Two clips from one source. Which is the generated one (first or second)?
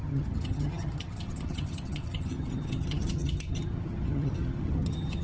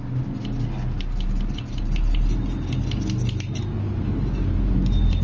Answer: first